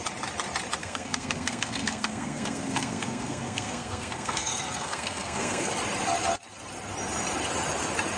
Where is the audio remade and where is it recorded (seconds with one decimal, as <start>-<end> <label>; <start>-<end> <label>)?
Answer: 0.0-0.8 recorded; 0.8-5.7 remade; 5.7-8.2 recorded